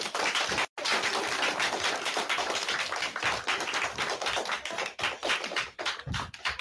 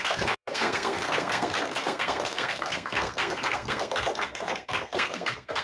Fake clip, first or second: second